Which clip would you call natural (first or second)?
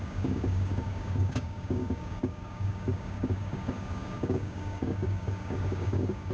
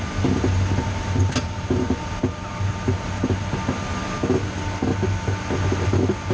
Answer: second